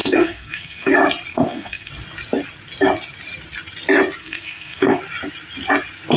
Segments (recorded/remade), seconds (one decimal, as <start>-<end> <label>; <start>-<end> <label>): 0.0-0.9 remade; 0.9-1.3 recorded; 1.3-1.9 remade; 1.9-4.2 recorded; 4.2-5.0 remade; 5.0-6.2 recorded